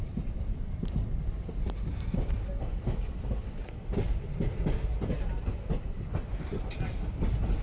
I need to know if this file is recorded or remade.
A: recorded